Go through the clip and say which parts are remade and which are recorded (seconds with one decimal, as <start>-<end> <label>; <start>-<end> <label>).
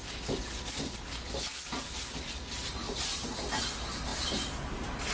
0.0-2.8 recorded; 2.8-3.5 remade; 3.5-4.1 recorded; 4.1-5.1 remade